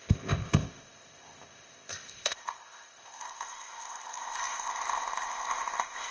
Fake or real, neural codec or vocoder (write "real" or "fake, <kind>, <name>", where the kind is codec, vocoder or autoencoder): fake, codec, ZipCodec